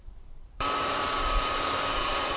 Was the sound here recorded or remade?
remade